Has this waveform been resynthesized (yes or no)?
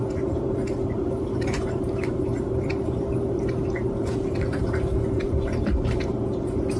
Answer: yes